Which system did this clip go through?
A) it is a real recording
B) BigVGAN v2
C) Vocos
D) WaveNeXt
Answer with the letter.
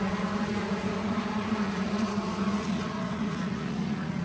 C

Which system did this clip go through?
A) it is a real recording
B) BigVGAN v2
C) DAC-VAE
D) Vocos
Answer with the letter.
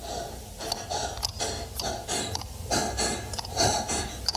A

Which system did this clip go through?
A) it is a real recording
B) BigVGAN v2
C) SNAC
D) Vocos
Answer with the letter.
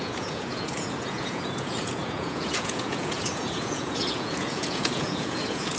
D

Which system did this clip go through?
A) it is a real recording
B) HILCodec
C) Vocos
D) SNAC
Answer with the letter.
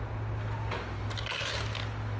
A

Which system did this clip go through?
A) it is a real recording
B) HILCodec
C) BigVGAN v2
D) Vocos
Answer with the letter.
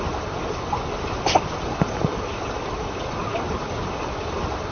A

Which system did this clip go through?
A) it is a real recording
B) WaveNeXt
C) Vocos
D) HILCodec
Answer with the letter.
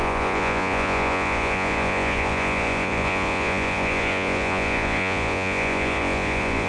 C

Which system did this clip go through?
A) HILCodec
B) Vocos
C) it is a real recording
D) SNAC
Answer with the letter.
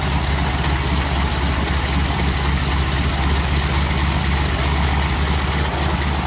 C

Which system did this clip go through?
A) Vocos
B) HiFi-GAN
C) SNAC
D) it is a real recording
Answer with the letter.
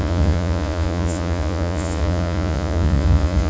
A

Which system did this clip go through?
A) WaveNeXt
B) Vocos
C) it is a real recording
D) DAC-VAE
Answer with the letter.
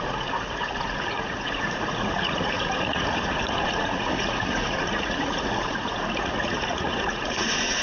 B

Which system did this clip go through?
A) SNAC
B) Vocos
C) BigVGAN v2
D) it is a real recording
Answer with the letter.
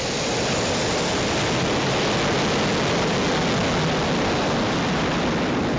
D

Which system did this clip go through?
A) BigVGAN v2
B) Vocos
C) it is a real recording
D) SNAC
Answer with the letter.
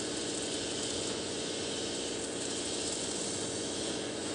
B